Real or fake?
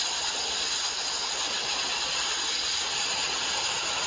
real